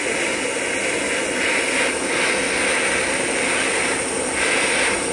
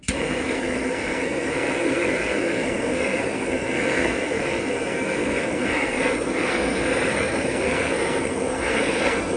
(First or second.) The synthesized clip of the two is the second